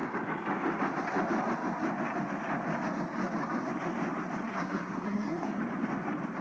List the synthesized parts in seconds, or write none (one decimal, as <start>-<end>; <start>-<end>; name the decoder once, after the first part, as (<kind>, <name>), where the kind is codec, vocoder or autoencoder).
4.5-5.6 (codec, SNAC)